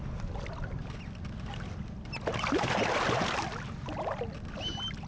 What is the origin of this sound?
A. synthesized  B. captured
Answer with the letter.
B